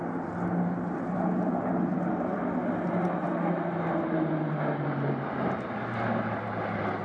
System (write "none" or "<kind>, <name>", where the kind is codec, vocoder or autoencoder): none